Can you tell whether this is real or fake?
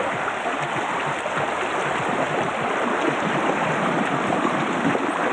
real